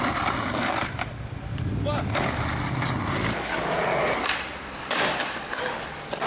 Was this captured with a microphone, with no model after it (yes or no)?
yes